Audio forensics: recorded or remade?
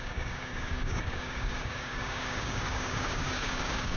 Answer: remade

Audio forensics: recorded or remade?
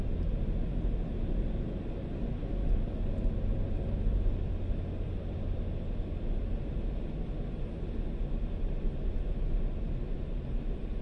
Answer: recorded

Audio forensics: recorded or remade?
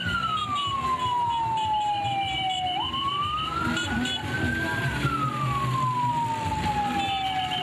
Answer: recorded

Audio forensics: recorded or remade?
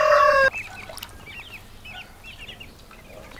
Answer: recorded